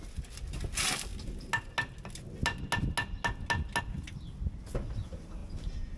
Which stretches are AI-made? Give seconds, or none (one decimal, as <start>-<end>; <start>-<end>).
none